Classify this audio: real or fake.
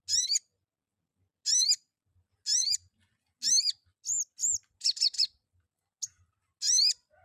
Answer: real